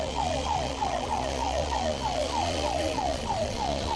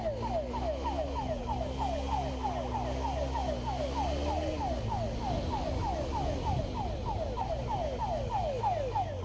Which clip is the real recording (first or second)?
second